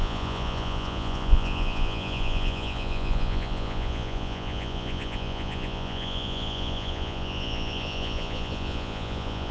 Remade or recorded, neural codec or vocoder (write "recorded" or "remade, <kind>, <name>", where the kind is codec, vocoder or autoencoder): remade, vocoder, Vocos